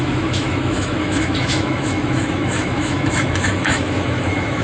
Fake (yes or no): yes